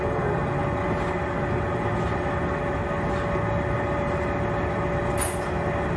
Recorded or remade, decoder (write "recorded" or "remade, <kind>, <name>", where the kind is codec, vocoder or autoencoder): recorded